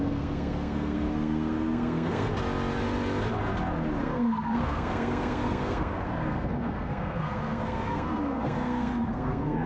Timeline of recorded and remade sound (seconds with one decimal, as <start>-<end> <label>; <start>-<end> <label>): 0.0-2.3 remade; 2.3-4.0 recorded; 4.0-9.7 remade